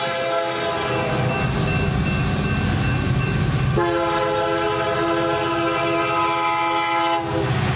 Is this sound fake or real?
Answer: real